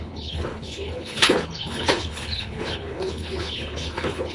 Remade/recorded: remade